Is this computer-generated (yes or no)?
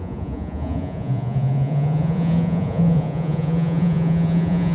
yes